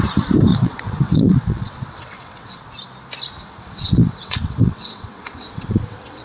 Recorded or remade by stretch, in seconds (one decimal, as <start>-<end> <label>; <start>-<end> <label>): 0.0-0.5 recorded; 0.5-2.6 remade; 2.6-3.4 recorded; 3.4-6.2 remade